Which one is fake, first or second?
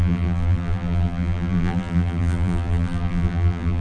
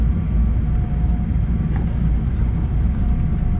first